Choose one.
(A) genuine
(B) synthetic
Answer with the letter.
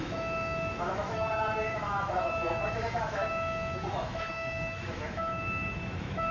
B